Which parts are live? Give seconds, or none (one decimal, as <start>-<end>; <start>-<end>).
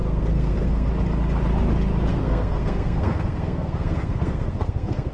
0.9-2.1